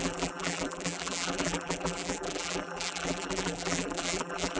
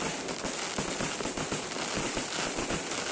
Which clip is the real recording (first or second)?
second